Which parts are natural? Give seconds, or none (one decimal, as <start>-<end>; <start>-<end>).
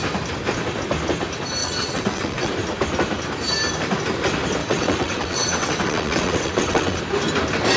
0.0-1.6; 2.5-4.6; 7.0-7.8